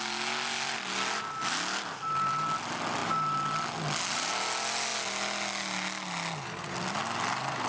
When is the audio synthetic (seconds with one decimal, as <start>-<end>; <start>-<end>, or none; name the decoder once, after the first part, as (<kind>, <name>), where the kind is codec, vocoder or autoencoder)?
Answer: none